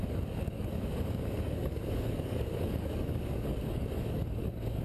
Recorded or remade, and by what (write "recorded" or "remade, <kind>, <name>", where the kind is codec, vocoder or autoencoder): remade, codec, DAC